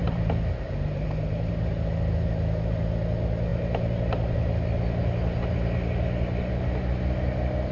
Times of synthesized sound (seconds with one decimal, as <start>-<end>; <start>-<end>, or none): 0.0-1.5